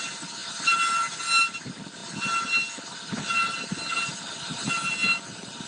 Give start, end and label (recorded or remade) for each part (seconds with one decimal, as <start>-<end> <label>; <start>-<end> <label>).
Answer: 0.0-5.7 recorded